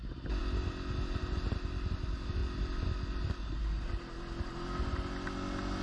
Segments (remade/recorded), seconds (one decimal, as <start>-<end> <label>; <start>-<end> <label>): 0.0-5.8 recorded